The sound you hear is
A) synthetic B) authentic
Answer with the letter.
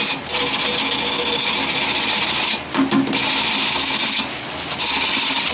B